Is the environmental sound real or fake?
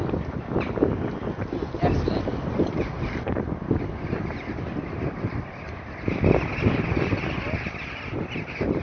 real